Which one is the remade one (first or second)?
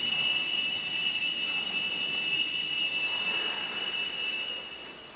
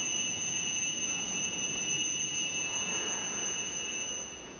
second